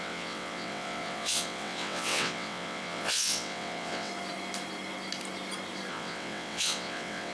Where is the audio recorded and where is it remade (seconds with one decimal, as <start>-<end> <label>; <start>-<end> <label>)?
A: 0.0-4.1 remade; 4.1-5.9 recorded; 5.9-7.3 remade